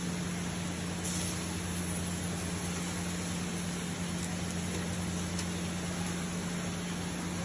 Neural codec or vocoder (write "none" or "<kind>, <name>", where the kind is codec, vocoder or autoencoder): none